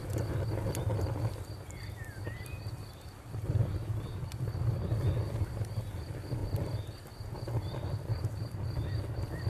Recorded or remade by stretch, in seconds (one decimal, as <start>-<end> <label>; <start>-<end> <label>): 0.0-0.9 remade; 0.9-6.4 recorded; 6.4-7.0 remade; 7.0-9.5 recorded